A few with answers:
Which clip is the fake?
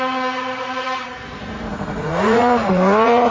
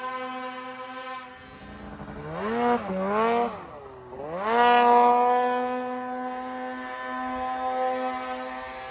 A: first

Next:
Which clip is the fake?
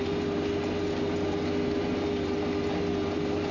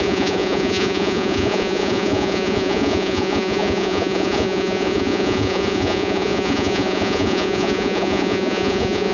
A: second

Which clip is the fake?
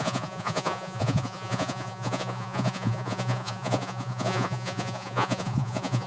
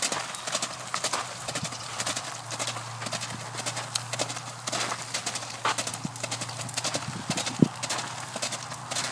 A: first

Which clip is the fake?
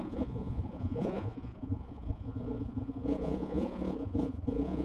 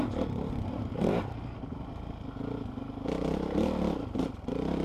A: first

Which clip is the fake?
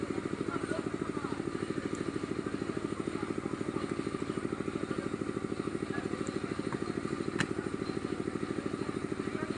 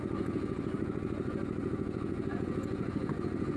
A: second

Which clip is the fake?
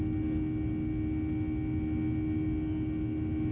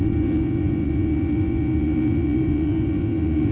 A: second